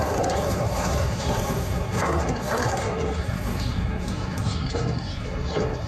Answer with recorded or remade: remade